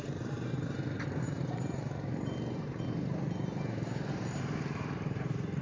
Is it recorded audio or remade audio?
remade